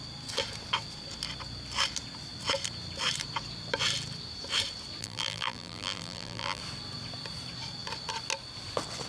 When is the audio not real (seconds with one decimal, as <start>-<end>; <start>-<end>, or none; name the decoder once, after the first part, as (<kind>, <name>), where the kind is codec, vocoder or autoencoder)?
5.0-6.6 (vocoder, BigVGAN v2)